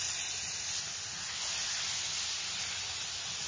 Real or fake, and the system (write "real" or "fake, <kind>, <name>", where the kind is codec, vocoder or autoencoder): real